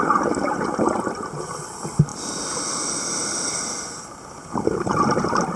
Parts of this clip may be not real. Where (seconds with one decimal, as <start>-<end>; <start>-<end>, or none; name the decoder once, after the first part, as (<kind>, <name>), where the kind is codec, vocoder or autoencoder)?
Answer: none